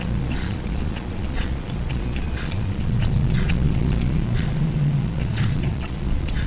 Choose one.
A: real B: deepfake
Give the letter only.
B